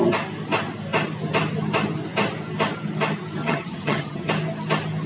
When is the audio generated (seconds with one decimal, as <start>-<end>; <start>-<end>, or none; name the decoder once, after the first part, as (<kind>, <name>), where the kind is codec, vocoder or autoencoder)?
3.4-4.3 (vocoder, HiFi-GAN)